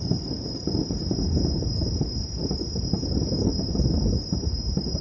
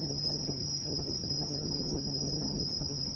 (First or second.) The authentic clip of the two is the first